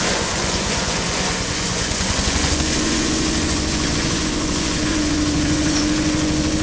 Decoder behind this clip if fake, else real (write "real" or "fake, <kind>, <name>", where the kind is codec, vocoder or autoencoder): fake, vocoder, Vocos